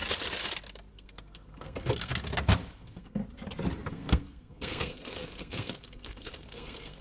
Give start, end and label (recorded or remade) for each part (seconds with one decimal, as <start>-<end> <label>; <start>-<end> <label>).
0.0-0.9 recorded; 0.9-2.1 remade; 2.1-2.7 recorded; 2.7-3.2 remade; 3.2-3.9 recorded; 3.9-7.0 remade